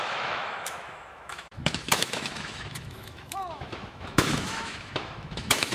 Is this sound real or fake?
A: fake